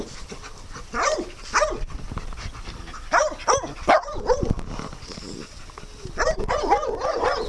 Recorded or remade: recorded